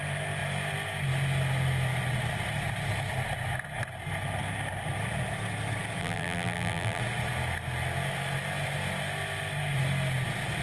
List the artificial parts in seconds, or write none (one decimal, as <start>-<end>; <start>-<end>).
6.0-7.0